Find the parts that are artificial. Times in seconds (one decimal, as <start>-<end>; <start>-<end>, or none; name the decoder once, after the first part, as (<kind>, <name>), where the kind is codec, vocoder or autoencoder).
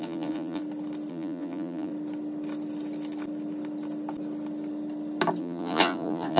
0.0-0.6 (vocoder, Vocos); 1.1-1.9; 5.4-6.4